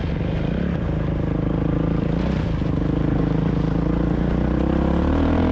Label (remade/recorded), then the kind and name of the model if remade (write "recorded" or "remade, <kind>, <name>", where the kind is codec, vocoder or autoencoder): recorded